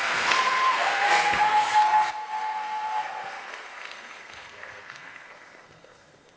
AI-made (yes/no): yes